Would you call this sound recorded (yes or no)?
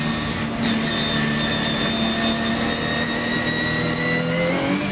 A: yes